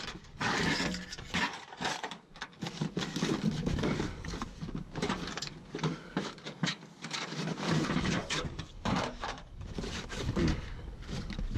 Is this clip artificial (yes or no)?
yes